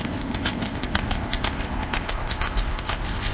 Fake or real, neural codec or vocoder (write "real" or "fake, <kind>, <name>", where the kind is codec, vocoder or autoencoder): fake, codec, ZipCodec